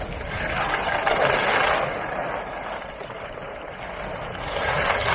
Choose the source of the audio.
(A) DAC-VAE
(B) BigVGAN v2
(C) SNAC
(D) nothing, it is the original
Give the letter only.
D